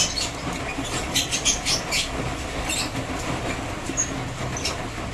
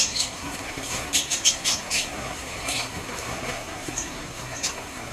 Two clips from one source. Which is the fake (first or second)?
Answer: second